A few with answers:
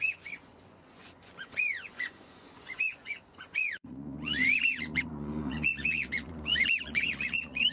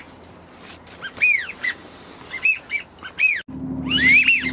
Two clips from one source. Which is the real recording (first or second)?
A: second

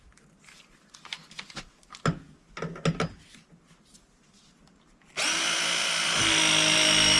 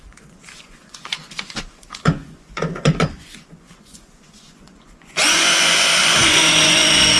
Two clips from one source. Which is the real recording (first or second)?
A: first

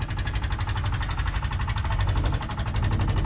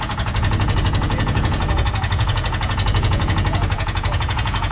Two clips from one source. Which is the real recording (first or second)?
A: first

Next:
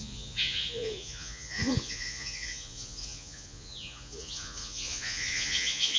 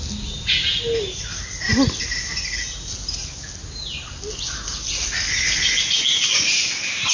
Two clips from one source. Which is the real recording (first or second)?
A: second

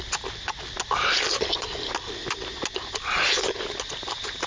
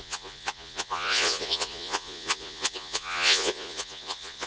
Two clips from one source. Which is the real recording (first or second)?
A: first